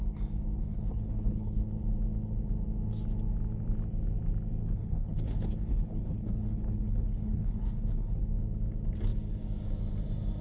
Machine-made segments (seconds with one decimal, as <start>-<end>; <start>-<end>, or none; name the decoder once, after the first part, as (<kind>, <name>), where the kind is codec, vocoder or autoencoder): 0.6-1.6 (codec, HILCodec); 4.6-8.2

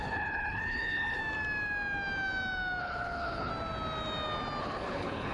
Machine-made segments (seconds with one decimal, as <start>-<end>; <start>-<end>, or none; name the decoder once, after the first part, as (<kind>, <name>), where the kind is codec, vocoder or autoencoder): 0.0-1.2 (codec, HILCodec); 2.8-3.5; 4.6-5.3

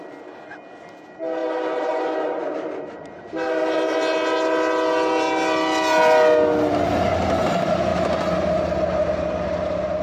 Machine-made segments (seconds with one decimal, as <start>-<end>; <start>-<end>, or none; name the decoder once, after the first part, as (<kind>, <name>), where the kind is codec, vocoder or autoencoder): none

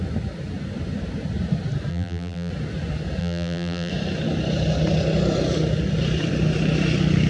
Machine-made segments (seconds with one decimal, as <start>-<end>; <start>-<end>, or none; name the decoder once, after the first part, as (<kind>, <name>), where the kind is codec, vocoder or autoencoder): 1.9-2.5 (vocoder, BigVGAN v2); 3.2-3.9